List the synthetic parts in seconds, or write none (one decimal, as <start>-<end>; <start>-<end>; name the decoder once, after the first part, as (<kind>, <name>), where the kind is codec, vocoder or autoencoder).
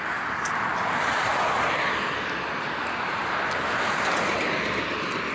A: none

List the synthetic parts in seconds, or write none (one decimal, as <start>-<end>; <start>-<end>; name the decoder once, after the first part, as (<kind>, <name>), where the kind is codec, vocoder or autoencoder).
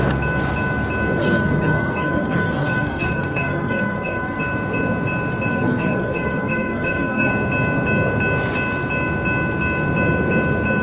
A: 1.2-4.4 (codec, SNAC); 5.5-7.3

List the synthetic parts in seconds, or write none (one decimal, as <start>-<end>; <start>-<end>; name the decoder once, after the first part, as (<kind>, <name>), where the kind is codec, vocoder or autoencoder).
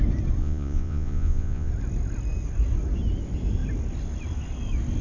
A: 0.4-1.7 (vocoder, Vocos)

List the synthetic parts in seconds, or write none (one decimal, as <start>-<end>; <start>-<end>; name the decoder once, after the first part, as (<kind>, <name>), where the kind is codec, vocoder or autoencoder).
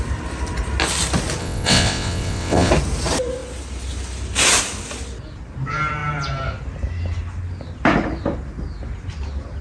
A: 1.4-2.7 (vocoder, WaveNeXt)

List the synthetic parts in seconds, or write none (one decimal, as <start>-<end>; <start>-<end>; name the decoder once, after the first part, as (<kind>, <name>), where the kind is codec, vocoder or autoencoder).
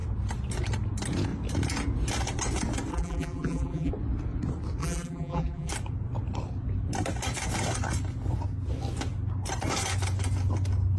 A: 2.9-3.9 (vocoder, BigVGAN v2); 4.8-5.7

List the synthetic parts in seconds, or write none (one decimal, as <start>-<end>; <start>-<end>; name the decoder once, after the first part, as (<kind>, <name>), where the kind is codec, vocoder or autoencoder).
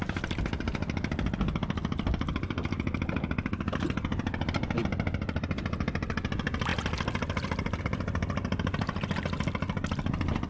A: none